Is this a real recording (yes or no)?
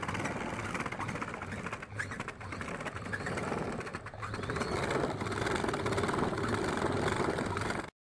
yes